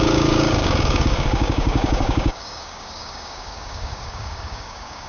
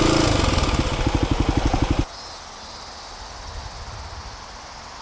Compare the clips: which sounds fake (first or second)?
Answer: first